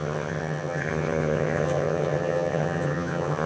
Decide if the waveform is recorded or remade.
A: remade